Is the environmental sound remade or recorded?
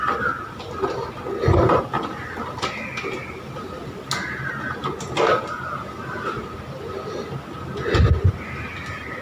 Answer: recorded